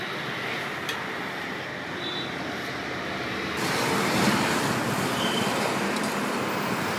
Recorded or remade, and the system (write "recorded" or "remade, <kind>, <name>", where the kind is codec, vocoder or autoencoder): recorded